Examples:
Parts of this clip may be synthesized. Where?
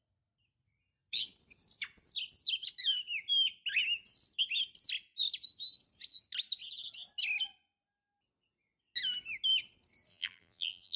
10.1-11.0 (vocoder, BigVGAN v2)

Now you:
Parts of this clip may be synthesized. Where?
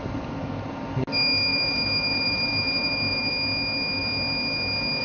1.5-3.3 (vocoder, BigVGAN v2)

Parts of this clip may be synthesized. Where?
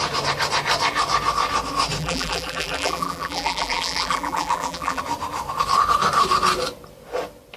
2.0-5.0 (vocoder, BigVGAN v2)